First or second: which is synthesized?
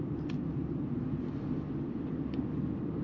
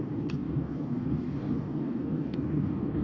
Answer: second